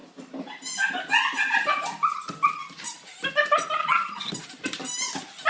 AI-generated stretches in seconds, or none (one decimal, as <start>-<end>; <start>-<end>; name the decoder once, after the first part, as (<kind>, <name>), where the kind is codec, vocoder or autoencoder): 3.8-4.3 (vocoder, HiFi-GAN)

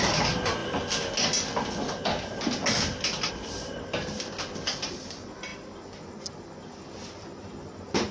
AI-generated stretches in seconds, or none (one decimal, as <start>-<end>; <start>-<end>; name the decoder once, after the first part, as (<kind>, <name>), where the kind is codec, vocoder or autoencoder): none

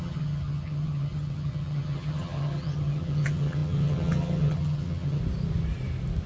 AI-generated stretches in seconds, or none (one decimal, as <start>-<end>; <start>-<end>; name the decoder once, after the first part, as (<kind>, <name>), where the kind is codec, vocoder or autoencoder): 0.0-5.2 (vocoder, HiFi-GAN)

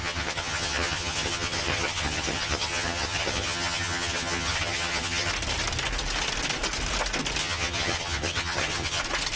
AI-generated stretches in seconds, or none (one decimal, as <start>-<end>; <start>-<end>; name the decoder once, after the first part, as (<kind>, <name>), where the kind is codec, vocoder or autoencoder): 0.0-5.3 (vocoder, HiFi-GAN); 7.4-9.0

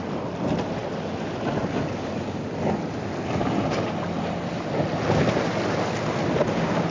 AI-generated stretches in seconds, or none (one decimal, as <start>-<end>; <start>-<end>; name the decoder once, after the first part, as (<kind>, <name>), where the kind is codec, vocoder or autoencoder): none